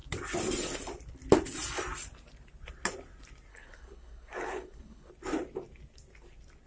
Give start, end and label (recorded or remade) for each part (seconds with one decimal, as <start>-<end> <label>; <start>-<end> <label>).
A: 0.0-3.5 recorded; 3.5-5.1 remade; 5.1-6.7 recorded